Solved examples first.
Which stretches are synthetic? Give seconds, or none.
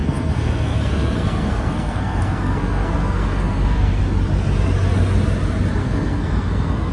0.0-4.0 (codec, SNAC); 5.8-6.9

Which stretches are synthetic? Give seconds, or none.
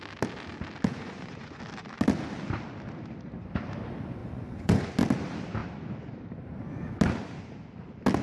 0.9-1.6 (vocoder, Vocos); 4.2-4.9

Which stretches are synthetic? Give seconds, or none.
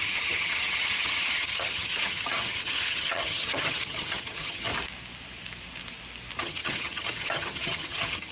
0.0-4.7 (vocoder, HiFi-GAN); 6.4-8.3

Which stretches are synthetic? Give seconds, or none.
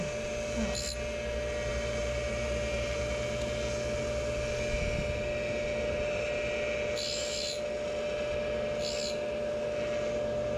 1.7-3.0 (vocoder, BigVGAN v2)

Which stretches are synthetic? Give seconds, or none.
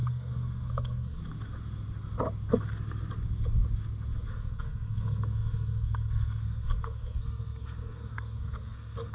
0.0-1.2 (codec, SNAC); 4.3-9.1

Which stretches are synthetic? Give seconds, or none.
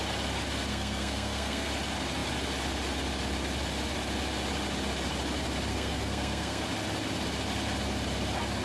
0.7-1.7 (codec, SNAC); 5.7-6.6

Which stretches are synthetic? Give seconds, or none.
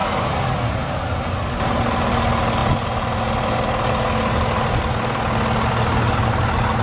none